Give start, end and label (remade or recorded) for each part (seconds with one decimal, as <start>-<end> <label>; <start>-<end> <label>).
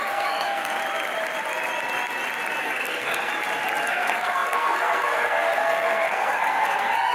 0.0-0.8 remade; 0.8-2.6 recorded; 2.6-3.3 remade; 3.3-3.9 recorded; 3.9-7.1 remade